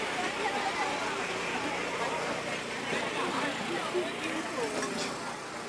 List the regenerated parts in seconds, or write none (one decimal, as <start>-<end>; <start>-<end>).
none